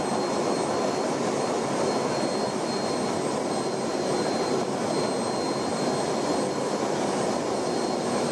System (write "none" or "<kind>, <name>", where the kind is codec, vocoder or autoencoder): none